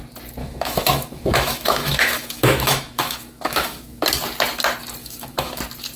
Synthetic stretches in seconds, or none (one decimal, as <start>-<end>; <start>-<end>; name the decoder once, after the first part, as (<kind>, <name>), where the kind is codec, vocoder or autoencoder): 0.4-4.0 (autoencoder, DAC-VAE); 5.0-5.6